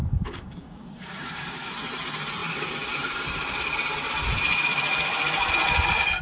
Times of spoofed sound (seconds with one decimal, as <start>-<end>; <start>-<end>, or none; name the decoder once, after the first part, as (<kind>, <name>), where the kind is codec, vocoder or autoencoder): 0.0-1.7 (codec, DAC)